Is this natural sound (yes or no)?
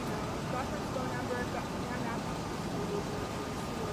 yes